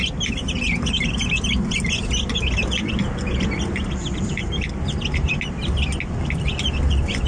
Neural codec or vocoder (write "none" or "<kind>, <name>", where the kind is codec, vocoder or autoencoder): none